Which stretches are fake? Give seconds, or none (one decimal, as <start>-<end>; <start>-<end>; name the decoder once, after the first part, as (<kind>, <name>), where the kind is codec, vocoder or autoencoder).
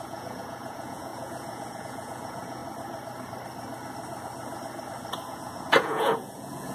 0.0-2.6 (vocoder, Vocos); 5.3-6.7